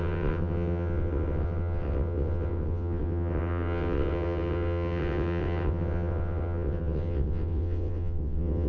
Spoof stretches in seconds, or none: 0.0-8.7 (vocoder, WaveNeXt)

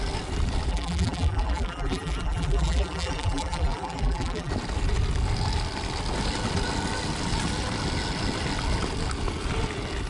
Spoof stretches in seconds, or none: 0.7-4.5 (vocoder, BigVGAN v2)

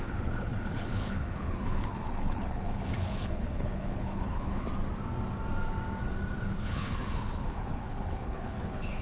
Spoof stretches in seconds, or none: 0.0-4.7 (codec, HILCodec); 6.4-9.0

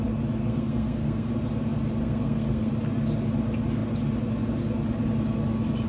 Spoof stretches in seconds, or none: 0.4-1.3 (codec, SNAC); 2.0-2.7

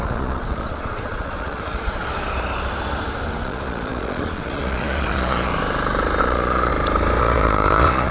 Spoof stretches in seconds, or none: 0.0-2.0 (vocoder, Vocos); 3.4-5.5; 6.2-6.7; 7.2-8.1

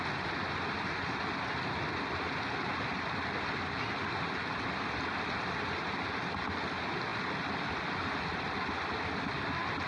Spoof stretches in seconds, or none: none

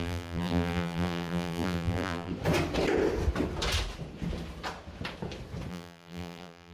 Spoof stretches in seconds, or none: 0.0-2.3 (vocoder, BigVGAN v2); 5.7-6.7

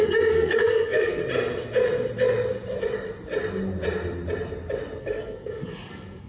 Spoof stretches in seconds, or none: 0.0-1.2 (codec, SNAC); 5.0-6.3